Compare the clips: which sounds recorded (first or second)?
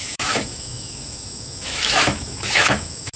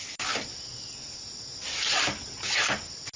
second